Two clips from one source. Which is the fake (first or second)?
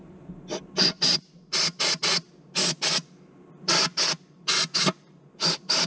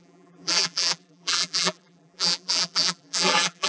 second